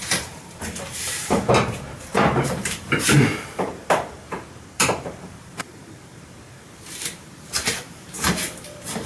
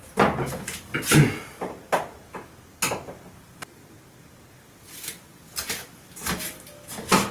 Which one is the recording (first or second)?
second